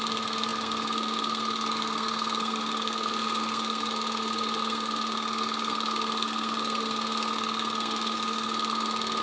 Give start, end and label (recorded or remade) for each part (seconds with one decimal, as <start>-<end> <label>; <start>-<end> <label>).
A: 0.0-9.2 remade